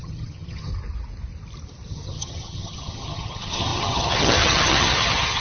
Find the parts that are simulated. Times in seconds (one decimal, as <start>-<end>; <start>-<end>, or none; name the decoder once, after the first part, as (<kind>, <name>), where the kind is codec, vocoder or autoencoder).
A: 0.0-0.7 (vocoder, HiFi-GAN); 1.9-5.4